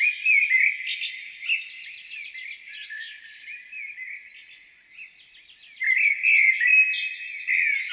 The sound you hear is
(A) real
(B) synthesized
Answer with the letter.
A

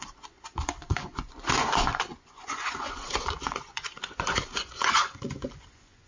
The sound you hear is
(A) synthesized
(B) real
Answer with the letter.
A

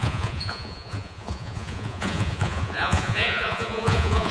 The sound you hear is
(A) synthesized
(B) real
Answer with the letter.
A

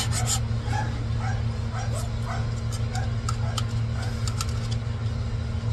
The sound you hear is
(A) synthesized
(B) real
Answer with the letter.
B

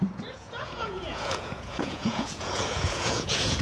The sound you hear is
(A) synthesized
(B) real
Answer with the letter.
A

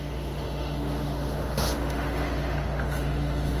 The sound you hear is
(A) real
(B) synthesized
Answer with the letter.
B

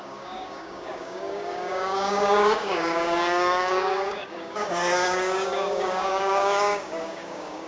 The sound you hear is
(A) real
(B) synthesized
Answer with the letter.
B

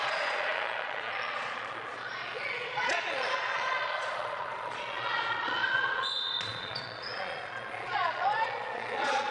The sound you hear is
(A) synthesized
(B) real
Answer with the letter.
A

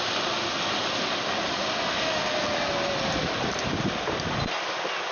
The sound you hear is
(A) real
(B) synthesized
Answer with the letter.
A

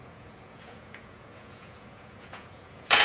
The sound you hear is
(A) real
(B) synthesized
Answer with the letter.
B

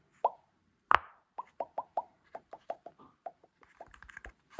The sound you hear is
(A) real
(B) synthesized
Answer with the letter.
B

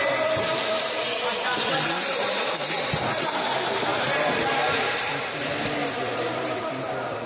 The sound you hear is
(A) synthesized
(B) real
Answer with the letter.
A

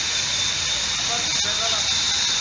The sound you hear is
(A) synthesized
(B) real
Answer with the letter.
B